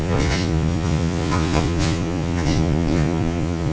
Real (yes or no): no